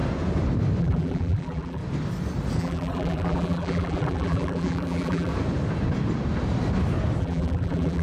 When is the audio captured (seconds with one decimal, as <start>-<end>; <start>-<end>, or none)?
0.0-0.8; 1.8-2.6; 5.3-7.2